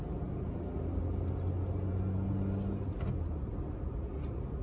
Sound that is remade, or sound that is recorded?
recorded